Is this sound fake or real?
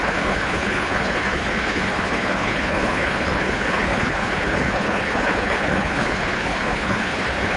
fake